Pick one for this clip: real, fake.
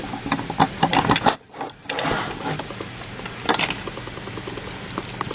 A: real